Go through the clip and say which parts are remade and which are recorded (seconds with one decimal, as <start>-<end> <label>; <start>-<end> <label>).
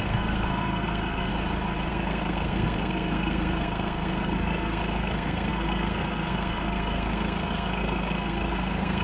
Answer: 0.0-1.3 remade; 1.3-1.9 recorded; 1.9-9.0 remade